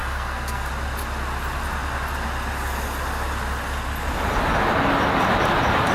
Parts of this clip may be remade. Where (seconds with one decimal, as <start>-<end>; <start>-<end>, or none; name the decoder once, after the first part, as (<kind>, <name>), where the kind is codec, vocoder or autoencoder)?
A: 0.0-0.7 (codec, SNAC)